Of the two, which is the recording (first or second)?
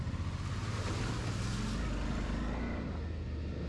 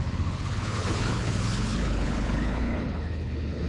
first